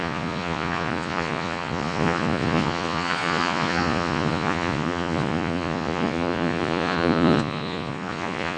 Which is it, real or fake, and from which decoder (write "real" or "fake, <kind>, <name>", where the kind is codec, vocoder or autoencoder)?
fake, vocoder, Vocos